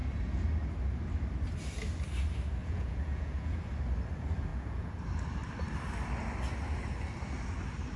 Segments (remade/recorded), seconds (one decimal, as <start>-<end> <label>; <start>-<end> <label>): 0.0-2.6 recorded; 2.6-3.6 remade; 3.6-4.5 recorded; 4.5-5.0 remade; 5.0-8.0 recorded